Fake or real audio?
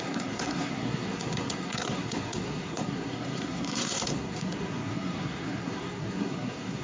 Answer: fake